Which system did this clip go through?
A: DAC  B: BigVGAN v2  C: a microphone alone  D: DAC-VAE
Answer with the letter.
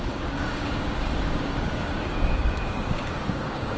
A